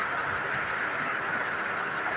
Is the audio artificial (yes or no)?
no